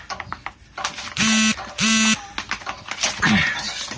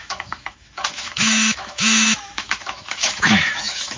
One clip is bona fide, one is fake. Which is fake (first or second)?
second